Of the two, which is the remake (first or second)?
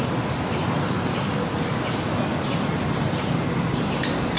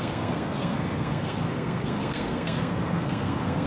second